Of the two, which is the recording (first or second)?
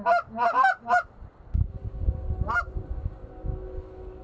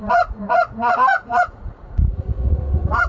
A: first